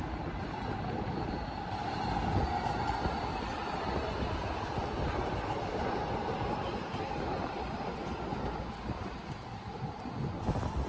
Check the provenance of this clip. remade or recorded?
recorded